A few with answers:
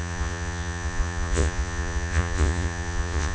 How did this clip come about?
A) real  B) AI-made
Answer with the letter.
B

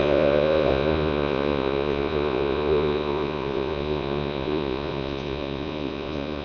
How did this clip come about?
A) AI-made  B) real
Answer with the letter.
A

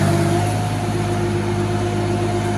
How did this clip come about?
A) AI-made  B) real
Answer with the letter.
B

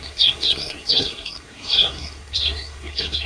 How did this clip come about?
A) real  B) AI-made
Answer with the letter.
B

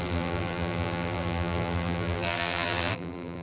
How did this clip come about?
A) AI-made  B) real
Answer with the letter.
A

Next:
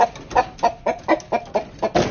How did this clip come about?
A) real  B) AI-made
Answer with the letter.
A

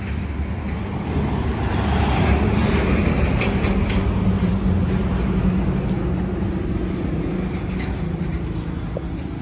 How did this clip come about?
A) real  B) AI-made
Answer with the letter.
A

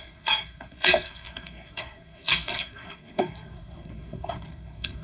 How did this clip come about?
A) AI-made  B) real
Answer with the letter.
A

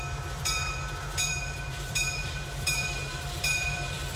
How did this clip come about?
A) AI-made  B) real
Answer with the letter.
A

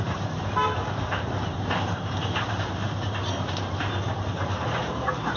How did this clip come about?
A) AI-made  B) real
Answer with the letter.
A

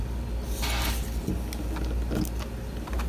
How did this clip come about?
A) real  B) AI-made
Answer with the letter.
A